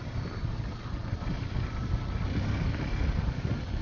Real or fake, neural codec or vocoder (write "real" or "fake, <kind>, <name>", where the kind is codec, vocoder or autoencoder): real